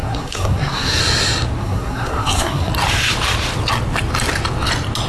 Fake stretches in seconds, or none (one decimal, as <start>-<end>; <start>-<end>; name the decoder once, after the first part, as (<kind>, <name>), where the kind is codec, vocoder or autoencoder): 0.0-1.0 (codec, SNAC); 1.6-2.7